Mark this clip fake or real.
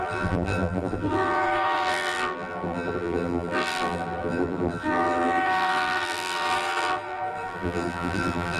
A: fake